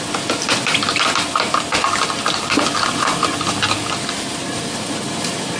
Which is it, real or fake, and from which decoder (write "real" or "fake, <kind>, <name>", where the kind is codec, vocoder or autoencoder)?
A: real